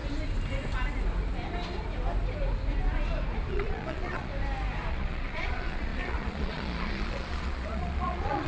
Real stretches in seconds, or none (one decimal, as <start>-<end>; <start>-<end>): 0.0-3.5; 4.3-4.9